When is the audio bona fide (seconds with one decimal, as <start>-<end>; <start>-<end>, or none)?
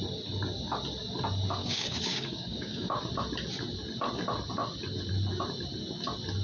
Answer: 0.0-1.6; 3.0-6.4